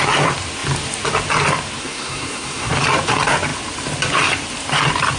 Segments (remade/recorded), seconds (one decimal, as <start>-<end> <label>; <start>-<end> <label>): 0.0-1.8 recorded; 1.8-2.7 remade; 2.7-5.2 recorded